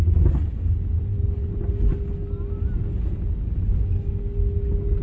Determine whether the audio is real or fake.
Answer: real